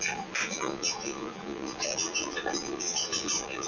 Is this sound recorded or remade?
remade